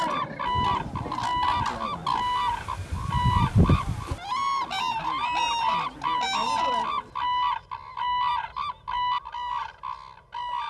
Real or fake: real